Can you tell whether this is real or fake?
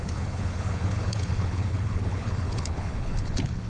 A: fake